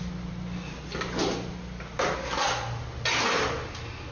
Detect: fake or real real